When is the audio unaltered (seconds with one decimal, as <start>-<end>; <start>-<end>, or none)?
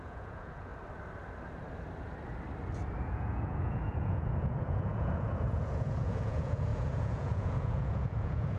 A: 0.7-3.0